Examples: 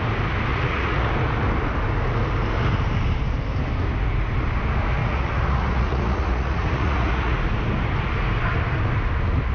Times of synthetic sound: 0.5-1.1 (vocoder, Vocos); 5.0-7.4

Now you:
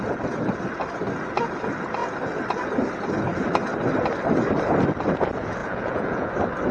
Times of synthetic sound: 5.6-6.3 (vocoder, Vocos)

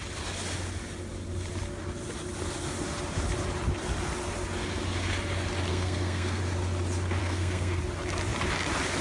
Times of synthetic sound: 5.7-6.4 (codec, SNAC); 7.2-7.8

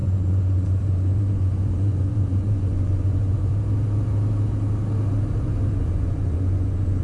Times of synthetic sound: 0.0-3.5 (vocoder, Vocos); 5.7-7.0

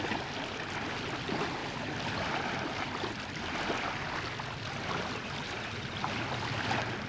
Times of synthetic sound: 1.6-5.1 (vocoder, BigVGAN v2)

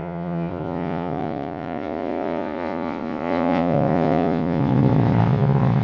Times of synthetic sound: 0.0-5.8 (vocoder, Vocos)

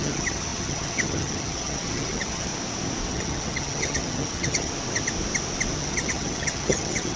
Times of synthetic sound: 0.0-2.5 (vocoder, HiFi-GAN); 3.1-4.7; 5.8-7.2

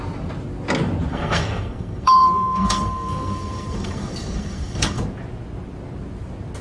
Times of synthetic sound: 1.1-5.0 (codec, SNAC)